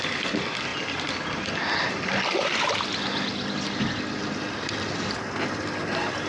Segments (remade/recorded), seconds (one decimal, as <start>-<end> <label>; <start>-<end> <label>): 0.0-6.3 recorded